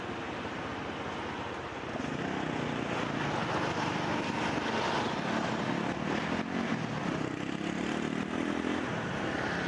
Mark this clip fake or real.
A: real